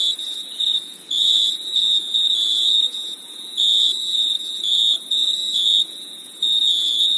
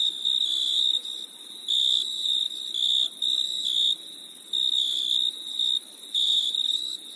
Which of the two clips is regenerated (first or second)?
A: first